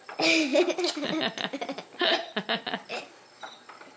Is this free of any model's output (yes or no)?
yes